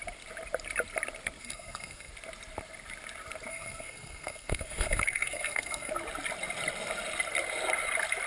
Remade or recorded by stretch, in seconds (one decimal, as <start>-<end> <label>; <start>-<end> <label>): 0.0-1.4 recorded; 1.4-2.1 remade; 2.1-3.5 recorded; 3.5-5.9 remade; 5.9-8.3 recorded